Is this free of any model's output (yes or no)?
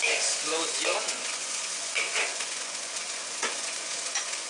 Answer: no